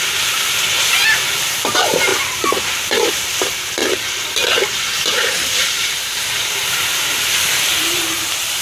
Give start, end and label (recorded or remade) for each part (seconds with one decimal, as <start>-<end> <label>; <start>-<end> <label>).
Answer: 0.0-3.8 remade; 3.8-5.1 recorded; 5.1-8.6 remade